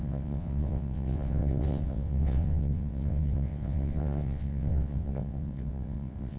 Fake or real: fake